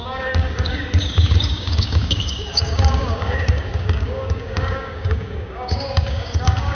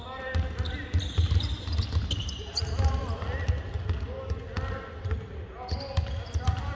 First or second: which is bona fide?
second